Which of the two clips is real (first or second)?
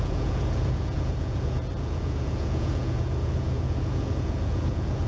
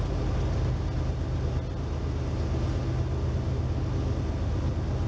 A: second